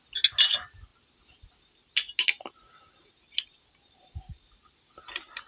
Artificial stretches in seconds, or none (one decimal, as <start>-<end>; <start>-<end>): none